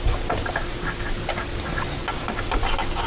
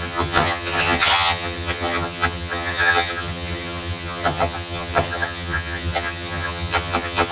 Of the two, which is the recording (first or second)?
first